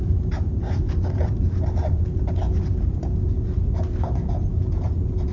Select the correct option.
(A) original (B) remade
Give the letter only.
A